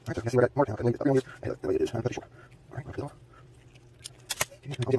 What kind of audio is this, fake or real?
real